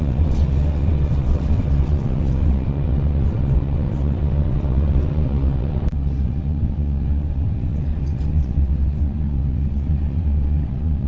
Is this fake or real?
fake